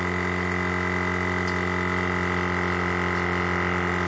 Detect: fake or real real